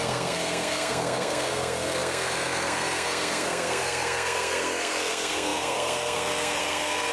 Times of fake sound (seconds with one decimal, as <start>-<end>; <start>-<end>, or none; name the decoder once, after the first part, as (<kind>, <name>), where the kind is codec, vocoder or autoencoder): 0.0-7.1 (codec, SNAC)